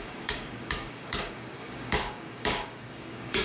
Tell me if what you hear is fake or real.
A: fake